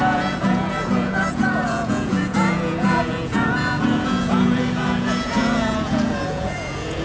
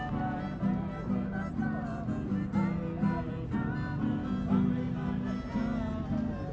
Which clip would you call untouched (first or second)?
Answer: second